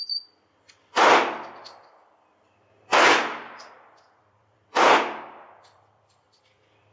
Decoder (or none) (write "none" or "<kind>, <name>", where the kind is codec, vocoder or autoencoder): vocoder, BigVGAN v2